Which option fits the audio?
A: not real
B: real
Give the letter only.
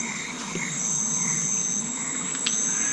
B